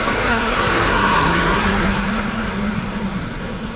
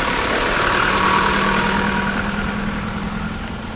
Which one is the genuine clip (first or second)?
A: second